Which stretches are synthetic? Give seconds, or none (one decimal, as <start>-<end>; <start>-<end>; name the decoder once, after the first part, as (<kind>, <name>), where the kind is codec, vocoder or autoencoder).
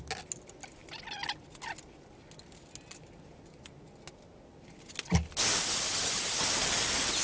none